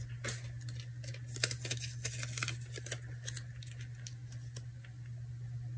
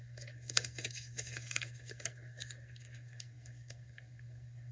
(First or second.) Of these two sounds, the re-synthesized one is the second